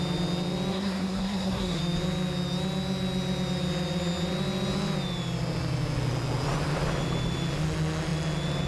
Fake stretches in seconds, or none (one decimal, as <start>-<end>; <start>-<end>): 0.7-1.8